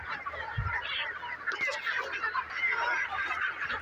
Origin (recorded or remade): recorded